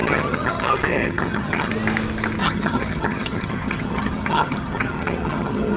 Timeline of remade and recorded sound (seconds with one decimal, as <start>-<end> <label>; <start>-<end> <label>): 0.0-1.7 remade; 1.7-2.4 recorded; 2.4-5.8 remade